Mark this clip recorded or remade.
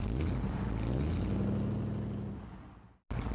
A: recorded